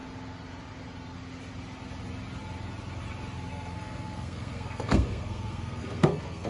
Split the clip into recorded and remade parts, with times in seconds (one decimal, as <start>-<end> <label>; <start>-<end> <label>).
0.0-3.5 recorded; 3.5-6.5 remade